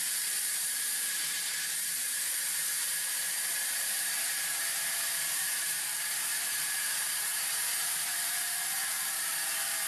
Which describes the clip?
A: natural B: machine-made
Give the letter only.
B